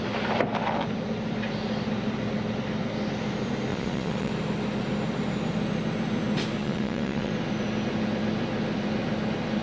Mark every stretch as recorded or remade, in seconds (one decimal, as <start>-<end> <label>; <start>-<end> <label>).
0.0-3.7 recorded; 3.7-4.3 remade; 4.3-6.6 recorded; 6.6-7.3 remade; 7.3-9.6 recorded